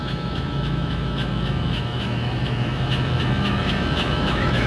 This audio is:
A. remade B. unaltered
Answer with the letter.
A